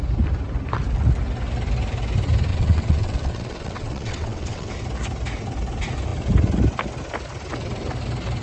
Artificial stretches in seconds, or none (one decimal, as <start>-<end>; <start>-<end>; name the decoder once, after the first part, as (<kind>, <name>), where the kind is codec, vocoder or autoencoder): 2.5-4.7 (vocoder, WaveNeXt)